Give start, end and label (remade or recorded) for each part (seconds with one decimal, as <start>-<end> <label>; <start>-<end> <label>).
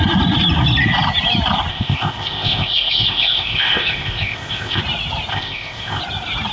0.0-1.7 recorded; 1.7-4.8 remade; 4.8-5.3 recorded; 5.3-6.0 remade; 6.0-6.5 recorded